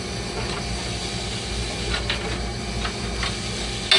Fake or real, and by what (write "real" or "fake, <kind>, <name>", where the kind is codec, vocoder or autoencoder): real